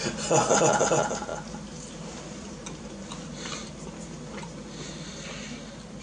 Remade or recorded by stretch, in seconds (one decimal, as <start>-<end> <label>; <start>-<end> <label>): 0.0-6.0 recorded